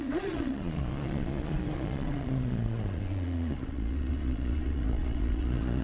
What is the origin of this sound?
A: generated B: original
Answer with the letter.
A